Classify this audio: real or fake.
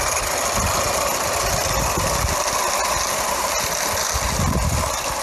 real